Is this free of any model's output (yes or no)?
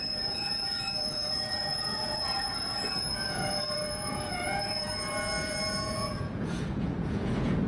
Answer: no